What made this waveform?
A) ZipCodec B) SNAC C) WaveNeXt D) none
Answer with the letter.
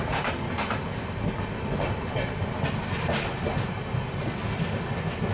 D